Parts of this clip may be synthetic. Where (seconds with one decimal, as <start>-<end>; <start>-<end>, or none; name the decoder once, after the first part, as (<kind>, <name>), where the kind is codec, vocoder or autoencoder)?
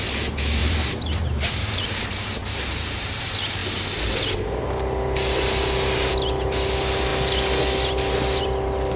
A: 0.6-3.2 (vocoder, BigVGAN v2)